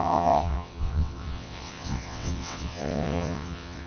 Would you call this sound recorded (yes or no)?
no